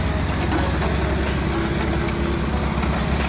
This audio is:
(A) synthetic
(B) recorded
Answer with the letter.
B